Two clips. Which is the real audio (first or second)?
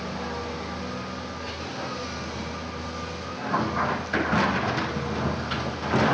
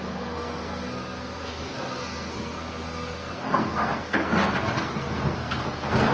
first